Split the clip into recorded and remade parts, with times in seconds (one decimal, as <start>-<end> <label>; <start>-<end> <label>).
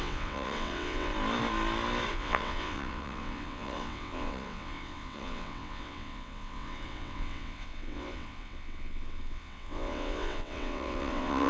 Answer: 0.0-1.1 remade; 1.1-2.1 recorded; 2.1-11.5 remade